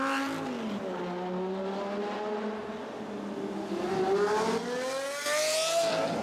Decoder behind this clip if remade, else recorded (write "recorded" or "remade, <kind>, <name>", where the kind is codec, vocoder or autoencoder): recorded